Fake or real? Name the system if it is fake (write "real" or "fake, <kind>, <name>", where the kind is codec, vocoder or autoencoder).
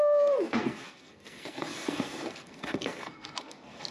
fake, codec, SNAC